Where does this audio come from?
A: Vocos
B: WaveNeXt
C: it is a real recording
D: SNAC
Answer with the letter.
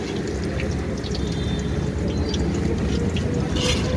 C